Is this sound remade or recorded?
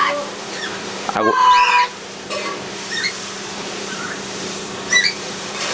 remade